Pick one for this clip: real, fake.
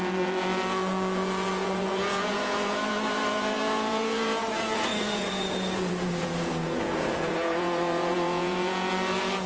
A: fake